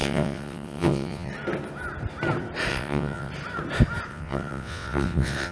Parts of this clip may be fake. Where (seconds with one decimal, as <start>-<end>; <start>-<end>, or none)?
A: 0.0-1.3; 2.7-3.3; 4.1-5.5